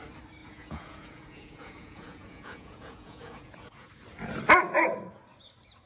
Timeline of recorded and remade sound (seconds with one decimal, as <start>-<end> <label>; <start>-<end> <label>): 0.0-0.4 recorded; 0.4-3.9 remade; 3.9-5.9 recorded

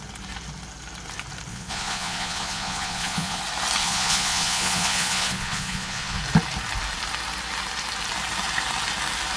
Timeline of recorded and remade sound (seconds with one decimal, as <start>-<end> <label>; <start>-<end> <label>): 0.0-1.5 recorded; 1.5-3.4 remade; 3.4-3.8 recorded; 3.8-6.2 remade; 6.2-9.4 recorded